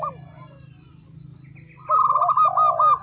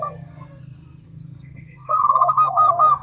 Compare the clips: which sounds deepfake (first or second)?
second